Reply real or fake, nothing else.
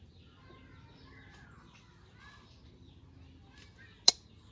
real